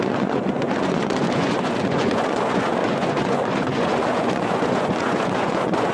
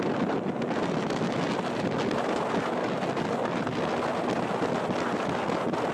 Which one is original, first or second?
second